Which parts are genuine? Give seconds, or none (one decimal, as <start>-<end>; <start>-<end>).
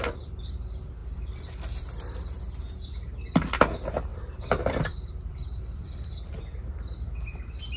0.0-4.1; 6.2-7.8